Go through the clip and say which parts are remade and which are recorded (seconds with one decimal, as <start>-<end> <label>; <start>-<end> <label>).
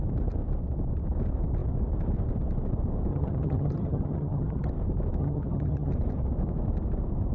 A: 0.0-3.1 recorded; 3.1-4.7 remade; 4.7-5.2 recorded; 5.2-5.9 remade; 5.9-7.3 recorded